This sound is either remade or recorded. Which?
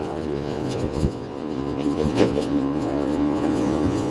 remade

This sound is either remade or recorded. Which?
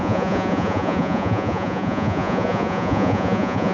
remade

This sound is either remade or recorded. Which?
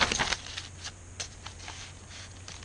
recorded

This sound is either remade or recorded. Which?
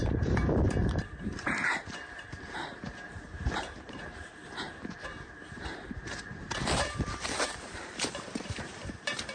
remade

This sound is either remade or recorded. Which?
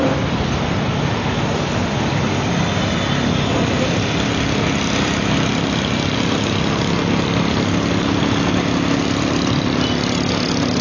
recorded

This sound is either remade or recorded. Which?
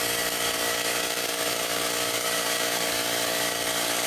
remade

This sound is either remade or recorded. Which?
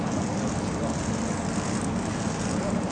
recorded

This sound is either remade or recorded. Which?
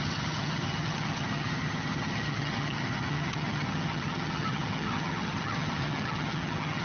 remade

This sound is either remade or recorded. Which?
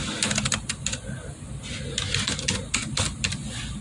recorded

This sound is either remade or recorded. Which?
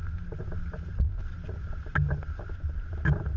recorded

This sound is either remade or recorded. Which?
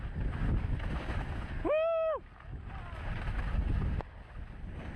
recorded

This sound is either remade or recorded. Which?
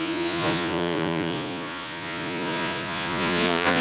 remade